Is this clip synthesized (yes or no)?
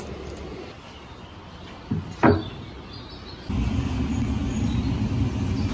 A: no